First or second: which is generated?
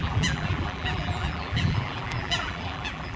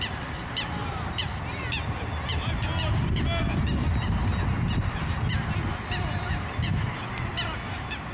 first